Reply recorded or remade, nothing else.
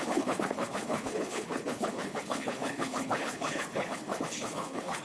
remade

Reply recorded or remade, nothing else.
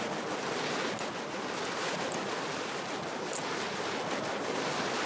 recorded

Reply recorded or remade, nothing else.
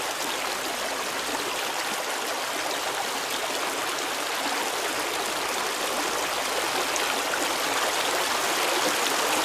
recorded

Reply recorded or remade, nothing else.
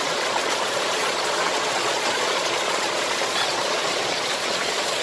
remade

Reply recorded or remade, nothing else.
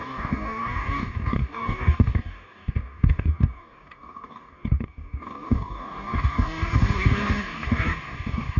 remade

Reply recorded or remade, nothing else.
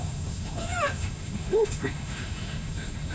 remade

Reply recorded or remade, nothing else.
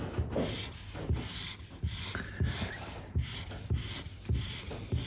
recorded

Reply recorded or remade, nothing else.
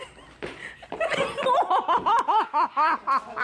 recorded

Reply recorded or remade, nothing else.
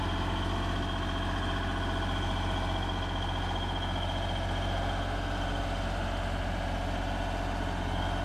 recorded